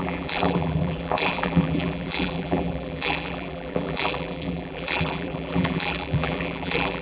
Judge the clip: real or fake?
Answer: fake